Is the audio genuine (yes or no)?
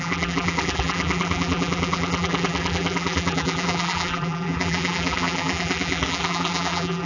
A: no